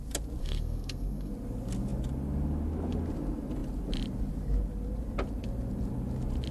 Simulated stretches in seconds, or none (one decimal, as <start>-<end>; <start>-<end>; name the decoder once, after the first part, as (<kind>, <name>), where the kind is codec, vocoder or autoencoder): 0.4-1.3 (codec, SNAC)